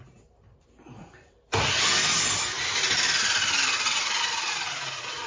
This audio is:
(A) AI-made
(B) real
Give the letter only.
A